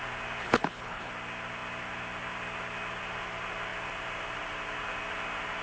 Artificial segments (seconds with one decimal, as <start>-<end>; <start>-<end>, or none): 0.4-1.1